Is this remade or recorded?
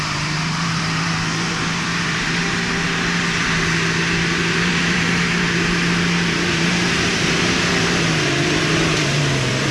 remade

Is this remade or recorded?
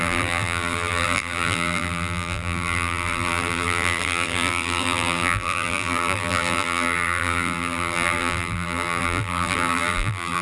remade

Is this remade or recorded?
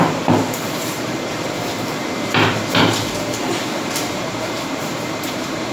remade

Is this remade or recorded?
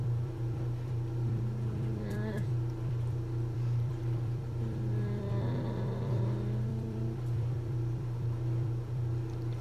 remade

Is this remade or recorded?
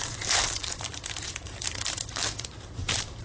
remade